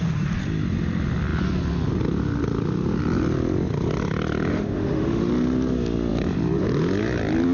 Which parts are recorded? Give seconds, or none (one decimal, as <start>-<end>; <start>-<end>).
0.0-4.5; 5.3-7.5